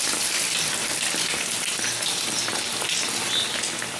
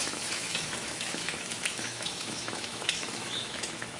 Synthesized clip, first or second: second